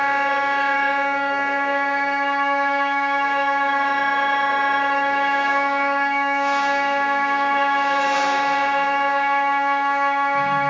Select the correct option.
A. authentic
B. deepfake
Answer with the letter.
B